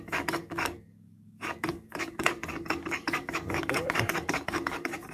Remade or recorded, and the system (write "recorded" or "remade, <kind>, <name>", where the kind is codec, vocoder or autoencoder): remade, codec, DAC